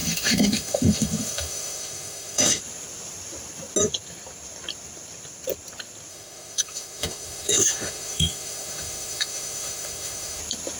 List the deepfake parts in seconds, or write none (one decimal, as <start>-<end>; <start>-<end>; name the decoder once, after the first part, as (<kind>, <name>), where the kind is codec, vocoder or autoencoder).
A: 0.0-2.6 (autoencoder, DAC-VAE); 6.1-10.4